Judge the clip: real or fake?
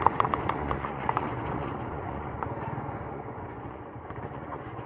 fake